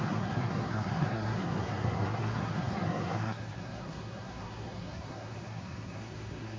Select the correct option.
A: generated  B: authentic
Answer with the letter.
A